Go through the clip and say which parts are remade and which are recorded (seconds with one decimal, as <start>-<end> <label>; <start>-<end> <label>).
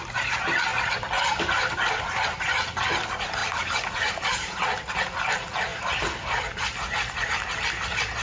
0.0-3.4 recorded; 3.4-4.6 remade; 4.6-5.7 recorded; 5.7-6.6 remade; 6.6-8.2 recorded